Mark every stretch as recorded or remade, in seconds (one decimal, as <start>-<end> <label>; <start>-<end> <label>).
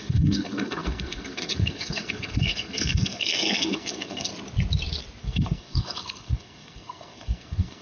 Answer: 0.0-4.3 remade; 4.3-5.2 recorded; 5.2-7.8 remade